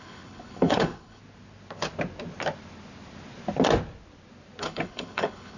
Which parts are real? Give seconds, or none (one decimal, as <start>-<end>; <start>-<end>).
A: 1.2-4.6